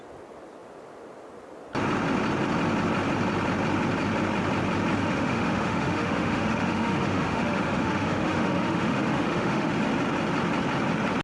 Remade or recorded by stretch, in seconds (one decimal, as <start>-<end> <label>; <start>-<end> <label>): 0.0-5.0 recorded; 5.0-9.7 remade; 9.7-11.2 recorded